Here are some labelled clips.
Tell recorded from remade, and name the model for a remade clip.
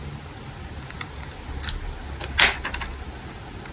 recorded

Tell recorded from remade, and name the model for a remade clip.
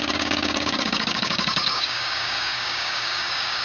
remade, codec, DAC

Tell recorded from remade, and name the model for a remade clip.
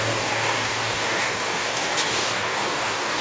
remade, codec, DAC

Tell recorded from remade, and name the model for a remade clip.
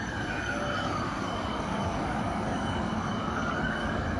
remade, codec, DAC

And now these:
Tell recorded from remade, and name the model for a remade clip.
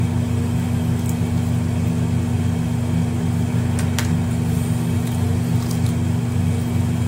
recorded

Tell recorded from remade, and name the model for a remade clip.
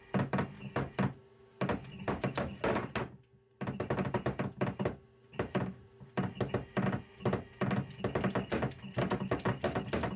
recorded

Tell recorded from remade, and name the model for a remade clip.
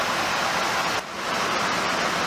recorded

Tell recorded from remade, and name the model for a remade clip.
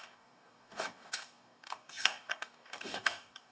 remade, codec, DAC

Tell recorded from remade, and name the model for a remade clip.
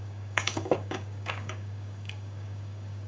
remade, codec, DAC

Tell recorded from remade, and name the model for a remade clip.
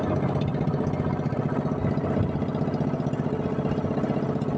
recorded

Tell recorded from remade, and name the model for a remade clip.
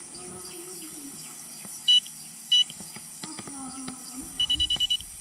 remade, codec, DAC